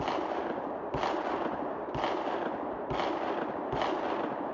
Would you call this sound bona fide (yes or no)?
yes